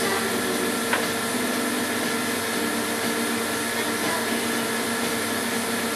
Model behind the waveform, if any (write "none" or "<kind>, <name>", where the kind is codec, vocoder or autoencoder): none